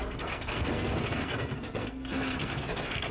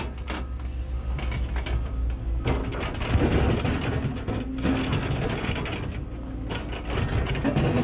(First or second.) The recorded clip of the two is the second